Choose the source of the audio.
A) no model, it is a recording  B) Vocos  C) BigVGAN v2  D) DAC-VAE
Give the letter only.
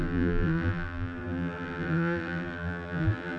C